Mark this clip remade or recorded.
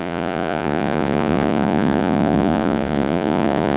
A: remade